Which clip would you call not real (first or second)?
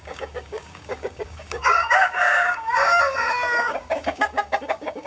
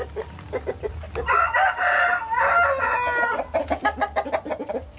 first